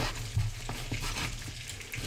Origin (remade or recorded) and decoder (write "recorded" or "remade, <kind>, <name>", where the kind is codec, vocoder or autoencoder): recorded